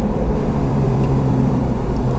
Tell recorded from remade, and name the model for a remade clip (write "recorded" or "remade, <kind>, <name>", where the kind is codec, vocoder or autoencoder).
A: remade, vocoder, BigVGAN v2